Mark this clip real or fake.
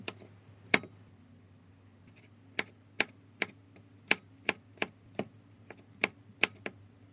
real